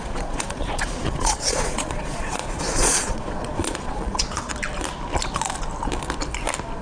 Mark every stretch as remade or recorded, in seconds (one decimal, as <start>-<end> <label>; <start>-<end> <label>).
0.0-4.5 remade; 4.5-6.8 recorded